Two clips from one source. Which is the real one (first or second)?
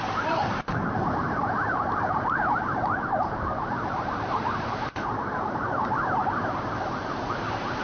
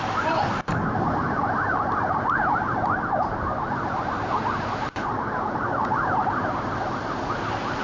second